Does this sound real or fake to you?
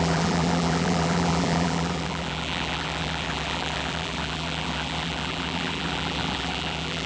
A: fake